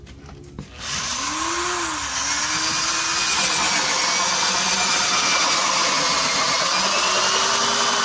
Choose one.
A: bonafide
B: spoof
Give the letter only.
A